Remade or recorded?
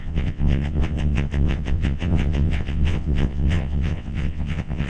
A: remade